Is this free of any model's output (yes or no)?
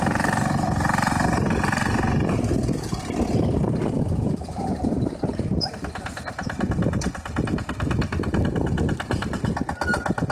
yes